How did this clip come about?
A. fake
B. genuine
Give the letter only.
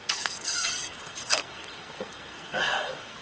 A